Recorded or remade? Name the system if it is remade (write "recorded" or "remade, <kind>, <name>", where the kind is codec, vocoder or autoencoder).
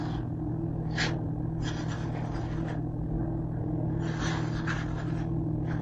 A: recorded